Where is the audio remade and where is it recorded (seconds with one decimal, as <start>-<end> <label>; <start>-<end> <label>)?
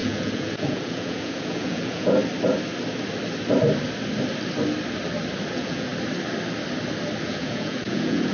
0.0-2.2 remade; 2.2-5.5 recorded; 5.5-5.9 remade; 5.9-7.2 recorded; 7.2-8.3 remade